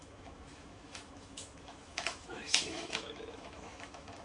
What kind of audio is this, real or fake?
fake